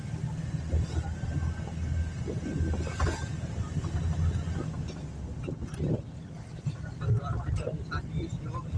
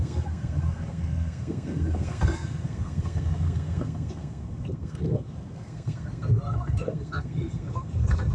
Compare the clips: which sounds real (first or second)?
first